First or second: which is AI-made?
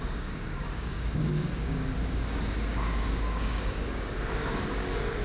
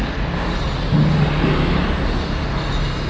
first